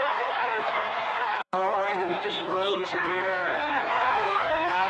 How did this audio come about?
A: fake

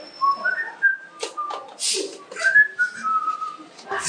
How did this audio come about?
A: real